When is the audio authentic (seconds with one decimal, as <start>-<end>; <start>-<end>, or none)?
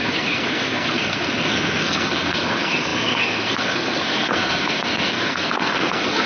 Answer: none